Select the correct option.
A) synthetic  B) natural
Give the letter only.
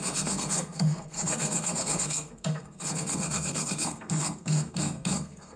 A